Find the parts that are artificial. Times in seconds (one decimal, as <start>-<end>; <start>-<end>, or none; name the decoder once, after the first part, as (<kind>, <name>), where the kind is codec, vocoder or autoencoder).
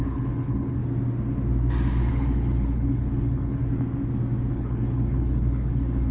0.0-0.8 (codec, HILCodec); 2.1-3.6; 4.5-6.1